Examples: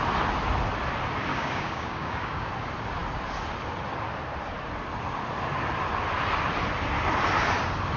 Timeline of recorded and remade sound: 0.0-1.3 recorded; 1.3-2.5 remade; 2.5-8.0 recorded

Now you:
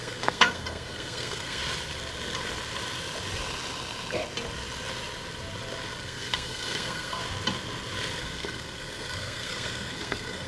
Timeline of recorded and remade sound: 0.0-1.6 remade; 1.6-6.0 recorded; 6.0-7.2 remade; 7.2-8.2 recorded; 8.2-10.5 remade

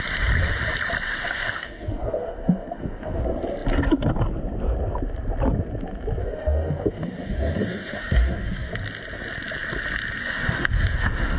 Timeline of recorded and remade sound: 0.0-1.1 recorded; 1.1-3.2 remade; 3.2-6.2 recorded; 6.2-8.7 remade; 8.7-10.2 recorded; 10.2-11.4 remade

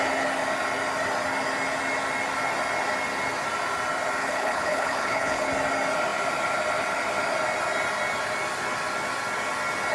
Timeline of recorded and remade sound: 0.0-4.2 recorded; 4.2-5.5 remade; 5.5-9.9 recorded

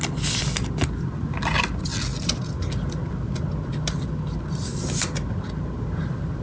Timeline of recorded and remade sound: 0.0-6.4 recorded